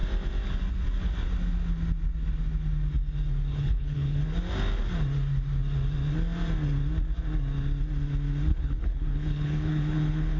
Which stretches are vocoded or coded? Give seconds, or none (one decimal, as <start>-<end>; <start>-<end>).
3.5-4.2; 8.5-10.4